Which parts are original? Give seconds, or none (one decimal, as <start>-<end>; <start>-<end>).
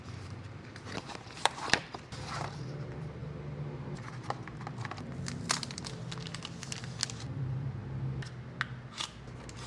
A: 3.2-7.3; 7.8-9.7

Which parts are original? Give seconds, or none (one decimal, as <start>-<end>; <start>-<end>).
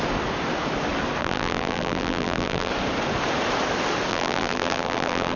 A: 0.0-1.2; 2.7-4.1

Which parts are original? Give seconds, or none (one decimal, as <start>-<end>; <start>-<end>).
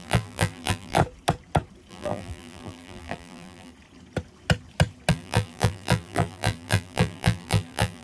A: 1.0-1.9; 3.7-5.1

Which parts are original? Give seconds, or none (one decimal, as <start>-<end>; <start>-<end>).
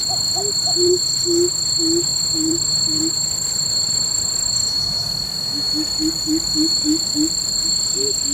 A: 1.0-2.1; 5.7-8.3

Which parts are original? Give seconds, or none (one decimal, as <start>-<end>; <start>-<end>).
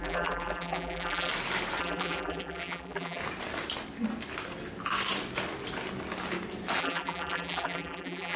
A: 1.3-1.8; 3.2-6.8